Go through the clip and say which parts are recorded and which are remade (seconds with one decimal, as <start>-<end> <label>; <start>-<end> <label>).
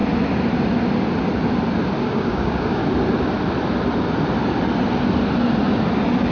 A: 0.0-2.0 recorded; 2.0-2.8 remade; 2.8-6.3 recorded